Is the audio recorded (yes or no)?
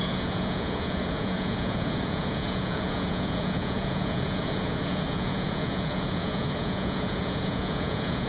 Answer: no